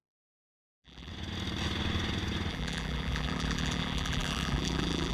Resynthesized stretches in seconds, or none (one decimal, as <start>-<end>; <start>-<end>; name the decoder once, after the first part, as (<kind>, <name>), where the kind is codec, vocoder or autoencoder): 0.0-1.1 (vocoder, BigVGAN v2); 2.5-5.1